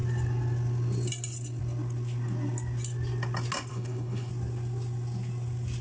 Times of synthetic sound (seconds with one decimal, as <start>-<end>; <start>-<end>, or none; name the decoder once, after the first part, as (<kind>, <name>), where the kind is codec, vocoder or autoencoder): 3.7-4.3 (codec, HILCodec)